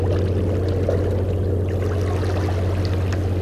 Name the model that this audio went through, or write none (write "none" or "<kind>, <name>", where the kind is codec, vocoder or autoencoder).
none